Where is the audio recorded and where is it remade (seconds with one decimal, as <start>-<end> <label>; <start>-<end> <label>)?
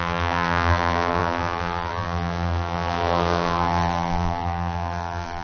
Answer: 0.0-5.4 remade